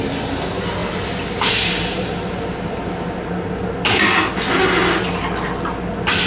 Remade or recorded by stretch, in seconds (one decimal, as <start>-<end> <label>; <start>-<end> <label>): 0.0-0.8 recorded; 0.8-3.8 remade; 3.8-6.3 recorded